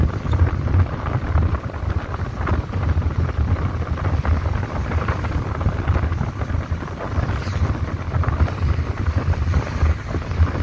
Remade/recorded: recorded